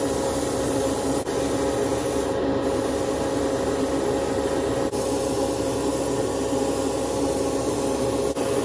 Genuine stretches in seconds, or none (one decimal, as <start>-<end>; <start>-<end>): 0.0-8.6